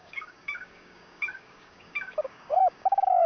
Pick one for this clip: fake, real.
fake